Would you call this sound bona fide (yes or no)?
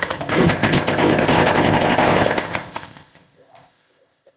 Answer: no